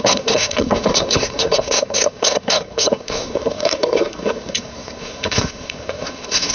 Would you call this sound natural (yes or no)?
no